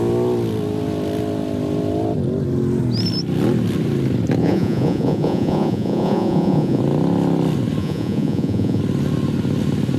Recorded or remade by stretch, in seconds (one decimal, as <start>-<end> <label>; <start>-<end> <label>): 0.0-4.4 recorded; 4.4-6.8 remade; 6.8-7.8 recorded; 7.8-8.8 remade; 8.8-10.0 recorded